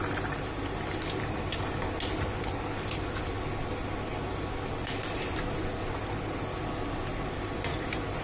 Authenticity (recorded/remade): recorded